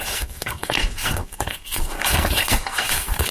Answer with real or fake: fake